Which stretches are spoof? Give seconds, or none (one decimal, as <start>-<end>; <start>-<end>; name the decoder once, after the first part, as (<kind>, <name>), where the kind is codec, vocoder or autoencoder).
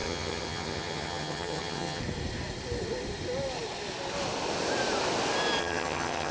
0.0-2.0 (vocoder, HiFi-GAN); 5.6-6.3